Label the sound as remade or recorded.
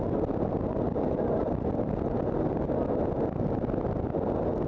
recorded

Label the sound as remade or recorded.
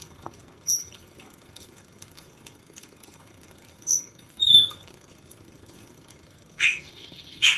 remade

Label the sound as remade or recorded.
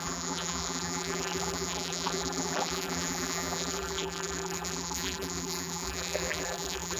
remade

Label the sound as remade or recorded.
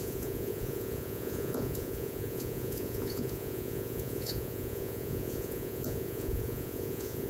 remade